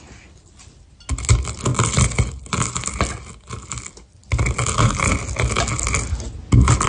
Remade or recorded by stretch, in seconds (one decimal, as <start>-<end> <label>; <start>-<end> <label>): 0.0-6.9 recorded